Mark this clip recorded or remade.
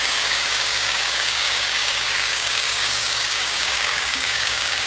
remade